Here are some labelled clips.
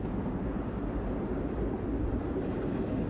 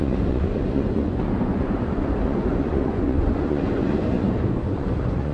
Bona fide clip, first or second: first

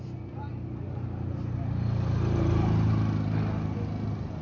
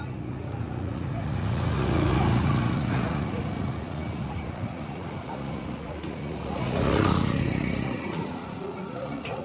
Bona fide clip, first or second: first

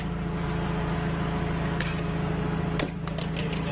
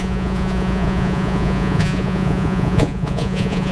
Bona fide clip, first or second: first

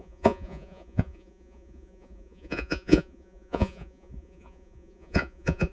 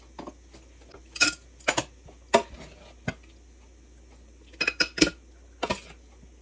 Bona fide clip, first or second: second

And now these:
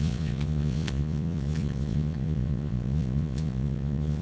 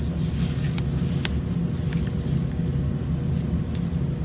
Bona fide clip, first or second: second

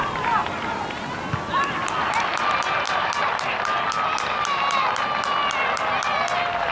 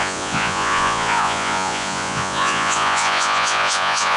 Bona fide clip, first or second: first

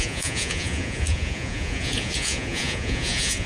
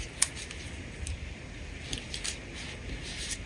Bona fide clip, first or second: second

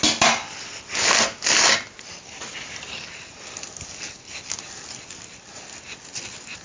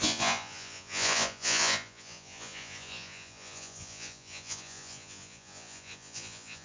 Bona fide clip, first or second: first